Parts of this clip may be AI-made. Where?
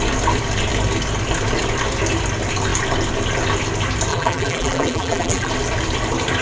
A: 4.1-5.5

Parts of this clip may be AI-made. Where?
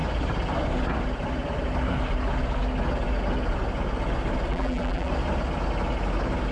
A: 4.5-5.1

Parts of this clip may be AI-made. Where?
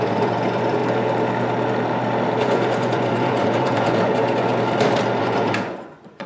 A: 0.0-0.8; 2.4-4.5; 5.2-6.3